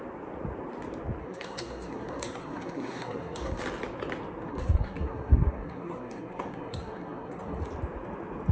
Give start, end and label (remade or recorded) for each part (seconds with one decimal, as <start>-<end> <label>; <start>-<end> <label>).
0.0-1.2 recorded; 1.2-3.6 remade; 3.6-4.5 recorded; 4.5-7.6 remade; 7.6-8.5 recorded